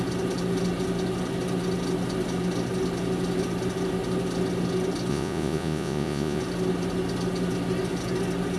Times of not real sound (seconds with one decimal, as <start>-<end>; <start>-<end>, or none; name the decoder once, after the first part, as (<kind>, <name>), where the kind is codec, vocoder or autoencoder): 5.1-6.4 (vocoder, Vocos)